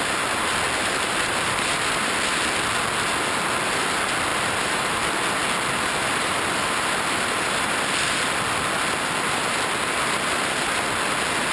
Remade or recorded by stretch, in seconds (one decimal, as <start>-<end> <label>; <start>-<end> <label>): 0.0-0.8 recorded; 0.8-1.8 remade; 1.8-4.3 recorded; 4.3-5.0 remade; 5.0-11.5 recorded